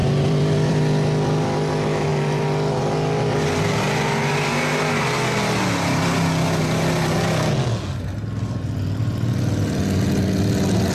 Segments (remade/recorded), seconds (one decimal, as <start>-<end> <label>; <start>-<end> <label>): 0.0-0.8 remade; 0.8-10.9 recorded

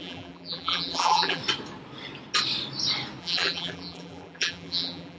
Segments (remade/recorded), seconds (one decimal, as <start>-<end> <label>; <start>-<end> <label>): 0.0-1.4 remade; 1.4-3.2 recorded; 3.2-5.2 remade

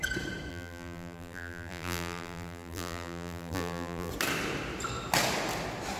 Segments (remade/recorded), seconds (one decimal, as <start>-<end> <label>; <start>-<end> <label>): 0.0-0.5 recorded; 0.5-4.1 remade; 4.1-6.0 recorded

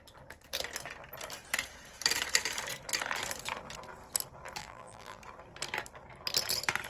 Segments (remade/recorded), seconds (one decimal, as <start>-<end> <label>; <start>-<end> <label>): 0.0-4.6 recorded; 4.6-5.2 remade; 5.2-6.9 recorded

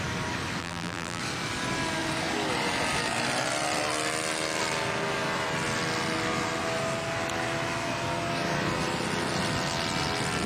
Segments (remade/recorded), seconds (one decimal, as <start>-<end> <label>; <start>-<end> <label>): 0.0-0.6 recorded; 0.6-1.2 remade; 1.2-10.5 recorded

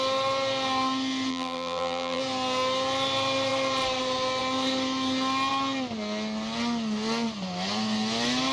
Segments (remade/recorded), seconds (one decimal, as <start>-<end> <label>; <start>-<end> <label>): 0.0-1.3 recorded; 1.3-2.2 remade; 2.2-8.5 recorded

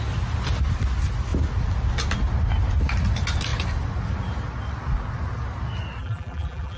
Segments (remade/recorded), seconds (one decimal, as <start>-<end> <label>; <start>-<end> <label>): 0.0-6.0 recorded; 6.0-6.8 remade